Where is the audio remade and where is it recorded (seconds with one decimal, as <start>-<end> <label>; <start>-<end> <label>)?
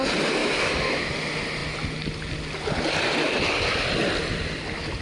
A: 0.0-0.4 recorded; 0.4-1.1 remade; 1.1-5.0 recorded